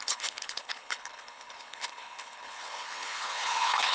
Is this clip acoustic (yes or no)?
no